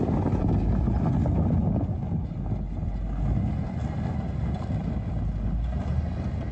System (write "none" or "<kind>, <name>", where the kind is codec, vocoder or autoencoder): none